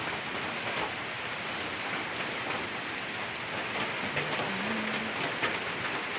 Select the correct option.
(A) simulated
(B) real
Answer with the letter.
B